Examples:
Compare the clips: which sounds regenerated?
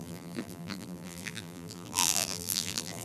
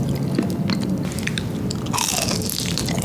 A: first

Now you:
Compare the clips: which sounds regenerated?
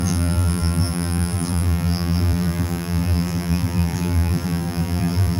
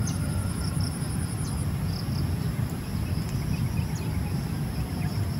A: first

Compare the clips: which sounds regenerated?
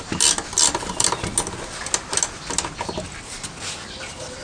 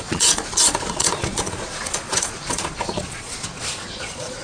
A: second